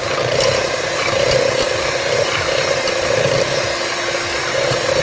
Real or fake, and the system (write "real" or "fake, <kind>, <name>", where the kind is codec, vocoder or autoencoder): real